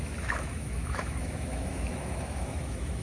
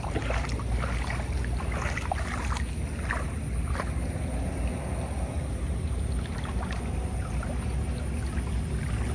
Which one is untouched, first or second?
second